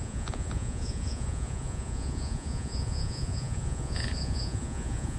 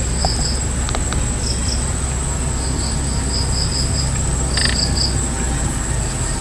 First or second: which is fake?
first